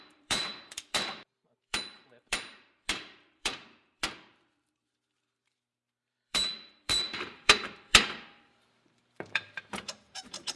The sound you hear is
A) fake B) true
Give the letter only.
A